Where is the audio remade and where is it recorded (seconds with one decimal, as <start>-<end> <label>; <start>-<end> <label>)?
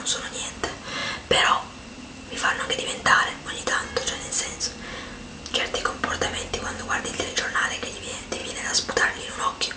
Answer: 0.0-9.8 recorded